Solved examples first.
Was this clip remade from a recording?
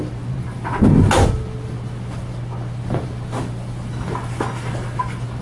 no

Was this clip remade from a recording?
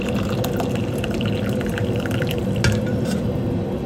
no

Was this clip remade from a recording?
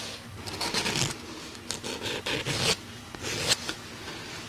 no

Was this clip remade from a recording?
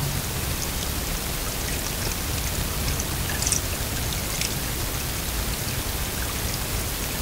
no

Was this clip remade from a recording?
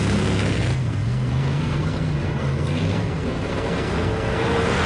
yes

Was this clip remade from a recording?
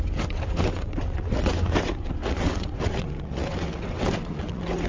yes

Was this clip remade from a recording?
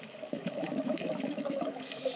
yes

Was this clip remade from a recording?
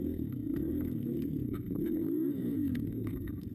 yes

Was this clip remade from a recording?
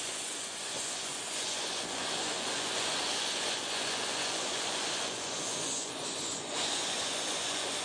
yes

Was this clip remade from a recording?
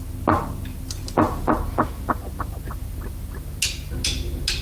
no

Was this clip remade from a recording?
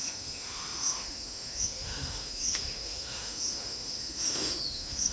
yes